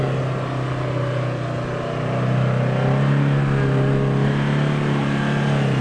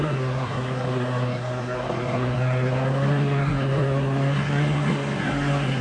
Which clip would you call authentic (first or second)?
first